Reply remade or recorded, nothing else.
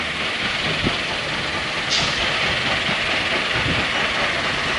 recorded